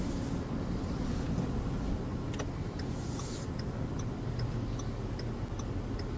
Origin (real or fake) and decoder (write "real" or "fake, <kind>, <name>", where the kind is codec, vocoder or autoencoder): real